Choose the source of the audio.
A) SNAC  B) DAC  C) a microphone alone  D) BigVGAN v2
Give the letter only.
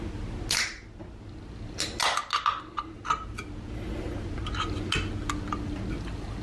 C